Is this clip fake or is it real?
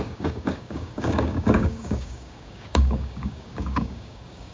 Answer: fake